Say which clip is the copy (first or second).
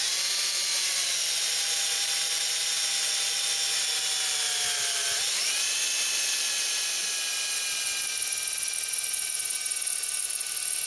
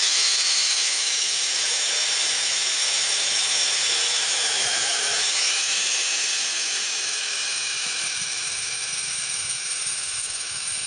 second